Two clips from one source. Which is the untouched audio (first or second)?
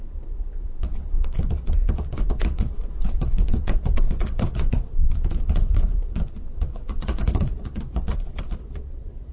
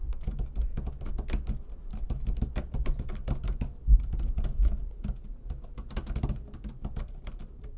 second